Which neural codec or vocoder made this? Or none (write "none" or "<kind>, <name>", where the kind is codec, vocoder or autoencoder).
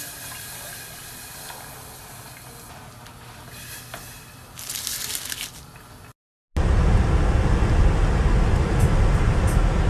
none